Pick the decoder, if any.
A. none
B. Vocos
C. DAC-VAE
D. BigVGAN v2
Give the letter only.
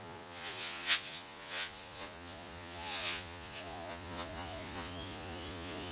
B